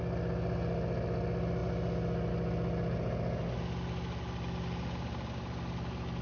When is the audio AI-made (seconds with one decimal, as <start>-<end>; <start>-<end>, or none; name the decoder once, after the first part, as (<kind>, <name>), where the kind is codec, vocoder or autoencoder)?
none

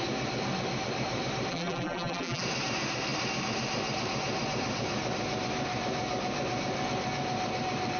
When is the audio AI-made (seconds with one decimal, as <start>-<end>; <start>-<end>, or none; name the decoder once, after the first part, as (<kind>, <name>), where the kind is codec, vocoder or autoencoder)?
1.5-2.4 (vocoder, BigVGAN v2)

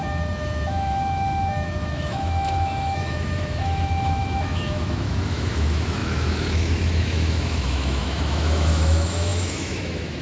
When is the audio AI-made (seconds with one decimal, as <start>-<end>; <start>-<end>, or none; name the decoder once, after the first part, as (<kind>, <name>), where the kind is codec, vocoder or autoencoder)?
0.0-10.2 (autoencoder, DAC-VAE)

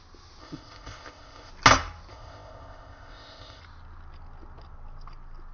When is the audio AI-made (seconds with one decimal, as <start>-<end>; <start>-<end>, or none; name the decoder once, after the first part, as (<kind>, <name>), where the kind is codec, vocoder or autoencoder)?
0.4-1.5 (codec, ZipCodec); 2.1-3.6

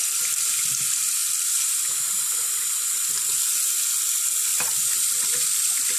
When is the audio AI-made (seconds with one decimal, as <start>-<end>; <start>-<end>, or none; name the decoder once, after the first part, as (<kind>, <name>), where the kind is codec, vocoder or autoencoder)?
none

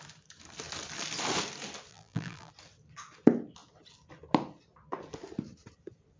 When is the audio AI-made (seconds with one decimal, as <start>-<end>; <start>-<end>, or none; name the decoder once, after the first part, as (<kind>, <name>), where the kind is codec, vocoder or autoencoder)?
1.9-2.5 (vocoder, BigVGAN v2)

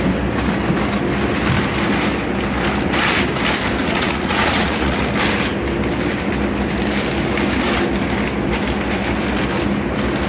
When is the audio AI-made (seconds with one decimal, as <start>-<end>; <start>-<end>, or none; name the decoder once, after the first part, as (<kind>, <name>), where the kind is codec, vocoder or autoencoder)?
3.8-5.0 (vocoder, Vocos)